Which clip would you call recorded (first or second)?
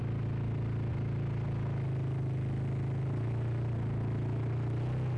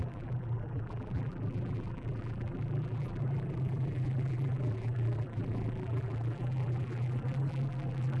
first